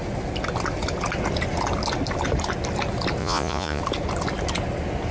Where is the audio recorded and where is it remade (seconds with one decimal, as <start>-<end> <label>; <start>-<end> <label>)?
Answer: 0.0-3.2 recorded; 3.2-3.8 remade; 3.8-5.1 recorded